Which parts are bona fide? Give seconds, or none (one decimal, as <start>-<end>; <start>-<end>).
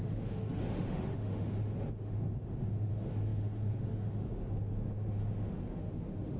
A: none